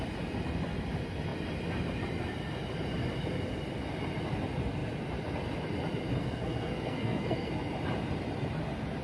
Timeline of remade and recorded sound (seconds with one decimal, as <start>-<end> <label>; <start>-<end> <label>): 0.0-6.2 recorded; 6.2-7.6 remade; 7.6-9.0 recorded